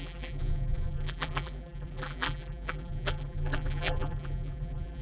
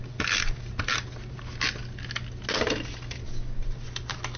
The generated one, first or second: first